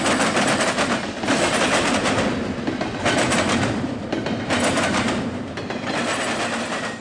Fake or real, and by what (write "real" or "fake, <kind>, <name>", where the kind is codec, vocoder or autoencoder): real